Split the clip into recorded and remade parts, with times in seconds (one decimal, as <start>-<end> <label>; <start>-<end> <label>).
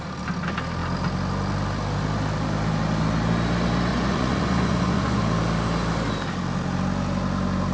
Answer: 0.0-3.9 recorded; 3.9-5.2 remade; 5.2-7.7 recorded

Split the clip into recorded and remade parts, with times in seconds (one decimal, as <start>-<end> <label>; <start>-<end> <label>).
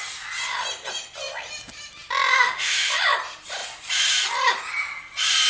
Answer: 0.0-2.3 recorded; 2.3-2.9 remade; 2.9-5.5 recorded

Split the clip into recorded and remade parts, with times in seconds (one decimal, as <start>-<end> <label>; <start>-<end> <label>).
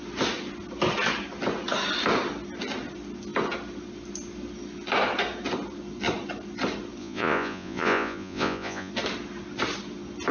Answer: 0.0-7.0 recorded; 7.0-8.9 remade; 8.9-10.3 recorded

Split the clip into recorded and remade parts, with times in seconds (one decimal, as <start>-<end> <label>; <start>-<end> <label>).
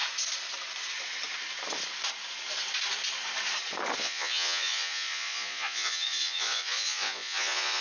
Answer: 0.0-4.0 recorded; 4.0-7.8 remade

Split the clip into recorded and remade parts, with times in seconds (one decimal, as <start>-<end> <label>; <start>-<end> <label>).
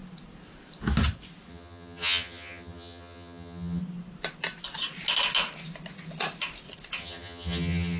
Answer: 0.0-1.5 recorded; 1.5-3.8 remade; 3.8-7.0 recorded; 7.0-8.0 remade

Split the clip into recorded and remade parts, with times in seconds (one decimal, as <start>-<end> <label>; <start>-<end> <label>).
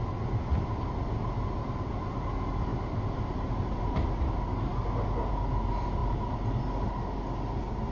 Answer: 0.0-7.9 recorded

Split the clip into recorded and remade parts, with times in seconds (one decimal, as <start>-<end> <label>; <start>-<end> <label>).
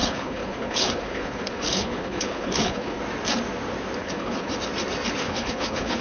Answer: 0.0-3.0 remade; 3.0-4.0 recorded; 4.0-4.5 remade; 4.5-5.2 recorded; 5.2-6.0 remade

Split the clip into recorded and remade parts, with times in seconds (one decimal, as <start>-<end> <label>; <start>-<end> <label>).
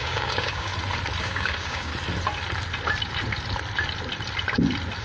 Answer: 0.0-0.7 remade; 0.7-1.2 recorded; 1.2-1.9 remade; 1.9-5.0 recorded